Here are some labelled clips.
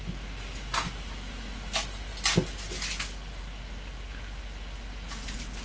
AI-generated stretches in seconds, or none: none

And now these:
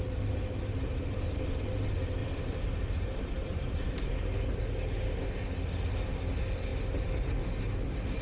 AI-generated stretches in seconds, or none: 2.2-4.0

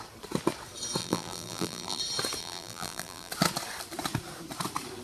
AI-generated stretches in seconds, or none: 1.0-2.0; 2.4-3.3

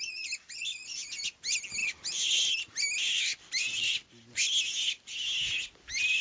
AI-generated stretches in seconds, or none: none

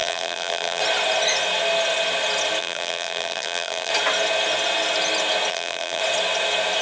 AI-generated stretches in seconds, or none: 0.0-0.8; 2.6-3.9; 5.5-6.0

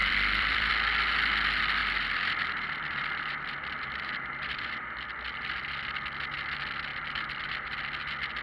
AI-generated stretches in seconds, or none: 0.0-0.7; 1.8-5.6; 6.9-7.7

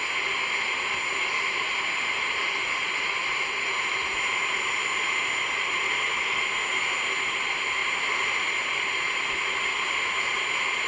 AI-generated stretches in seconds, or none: none

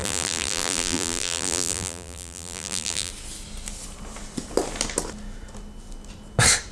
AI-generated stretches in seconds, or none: 0.0-3.1